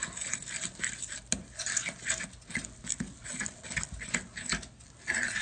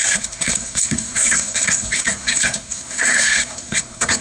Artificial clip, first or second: second